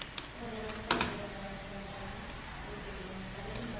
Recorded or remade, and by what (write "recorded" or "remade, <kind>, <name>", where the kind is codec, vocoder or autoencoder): recorded